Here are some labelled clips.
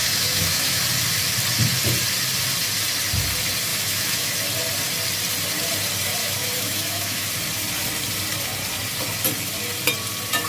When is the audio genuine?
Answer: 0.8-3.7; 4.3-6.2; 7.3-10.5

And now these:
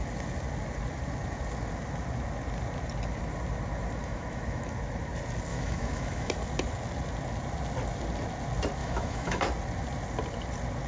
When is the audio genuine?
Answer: 0.0-4.0; 4.7-5.5; 6.3-8.8; 9.4-10.9

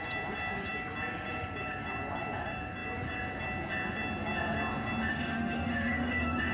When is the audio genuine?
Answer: 0.0-5.1